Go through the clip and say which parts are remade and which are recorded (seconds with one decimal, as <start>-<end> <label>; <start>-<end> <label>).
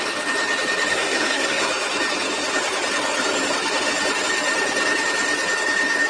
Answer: 0.0-0.9 recorded; 0.9-1.7 remade; 1.7-6.1 recorded